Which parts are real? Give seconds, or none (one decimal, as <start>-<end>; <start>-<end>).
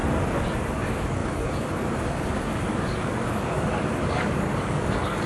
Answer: 0.0-0.7